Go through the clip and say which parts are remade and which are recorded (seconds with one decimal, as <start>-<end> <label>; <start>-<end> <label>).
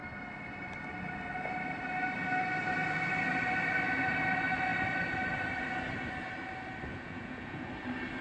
0.0-6.9 recorded; 6.9-7.7 remade; 7.7-8.2 recorded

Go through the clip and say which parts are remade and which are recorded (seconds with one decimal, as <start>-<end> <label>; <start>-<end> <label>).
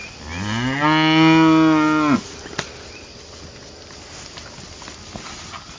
0.0-5.8 recorded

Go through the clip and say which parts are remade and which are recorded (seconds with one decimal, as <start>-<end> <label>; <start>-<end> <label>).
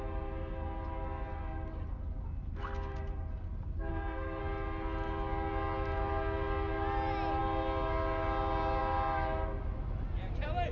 0.0-3.9 recorded; 3.9-4.4 remade; 4.4-10.7 recorded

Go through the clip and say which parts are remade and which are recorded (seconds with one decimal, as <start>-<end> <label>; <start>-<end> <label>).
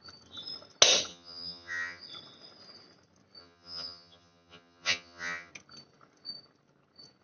0.0-1.1 recorded; 1.1-2.0 remade; 2.0-3.4 recorded; 3.4-5.5 remade; 5.5-7.2 recorded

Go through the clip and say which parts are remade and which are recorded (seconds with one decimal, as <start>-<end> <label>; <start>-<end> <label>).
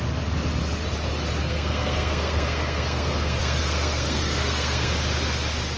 0.0-1.4 recorded; 1.4-4.9 remade; 4.9-5.8 recorded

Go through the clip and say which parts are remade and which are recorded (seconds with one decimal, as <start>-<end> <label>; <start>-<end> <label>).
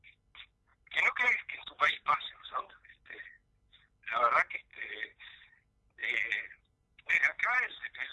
0.0-0.7 recorded; 0.7-2.6 remade; 2.6-4.7 recorded; 4.7-5.6 remade; 5.6-6.0 recorded; 6.0-7.1 remade; 7.1-8.1 recorded